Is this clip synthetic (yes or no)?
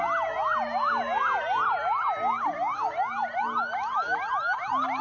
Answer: no